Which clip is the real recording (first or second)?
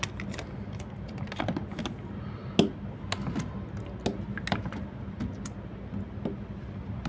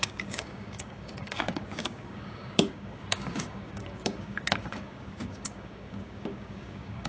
first